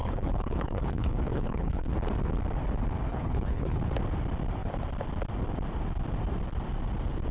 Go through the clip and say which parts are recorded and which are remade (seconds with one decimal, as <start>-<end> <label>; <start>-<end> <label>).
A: 0.0-1.9 remade; 1.9-3.1 recorded; 3.1-3.8 remade; 3.8-7.3 recorded